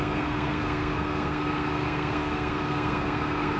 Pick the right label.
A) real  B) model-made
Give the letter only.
B